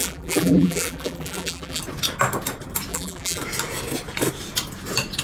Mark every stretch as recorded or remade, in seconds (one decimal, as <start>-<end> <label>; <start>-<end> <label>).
0.0-1.8 remade; 1.8-2.9 recorded; 2.9-3.4 remade; 3.4-5.2 recorded